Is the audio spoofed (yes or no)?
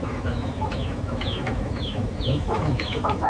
yes